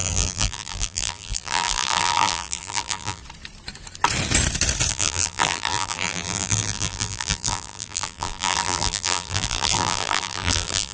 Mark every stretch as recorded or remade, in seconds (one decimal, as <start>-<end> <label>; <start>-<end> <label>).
0.0-3.2 remade; 3.2-4.9 recorded; 4.9-10.9 remade